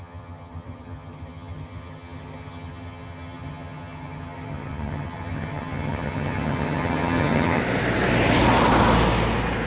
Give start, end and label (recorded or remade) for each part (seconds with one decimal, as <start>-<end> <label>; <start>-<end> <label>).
0.0-7.6 remade; 7.6-9.7 recorded